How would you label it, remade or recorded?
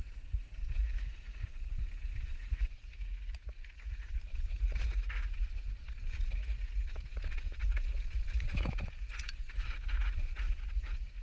remade